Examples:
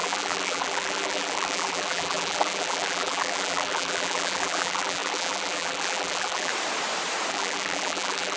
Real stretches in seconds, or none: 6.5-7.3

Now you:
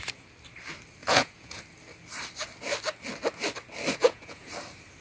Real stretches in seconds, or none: 0.0-1.0; 1.6-4.0; 4.5-5.0